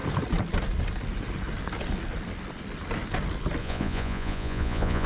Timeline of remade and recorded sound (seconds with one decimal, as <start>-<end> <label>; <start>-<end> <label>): 0.0-3.6 recorded; 3.6-5.1 remade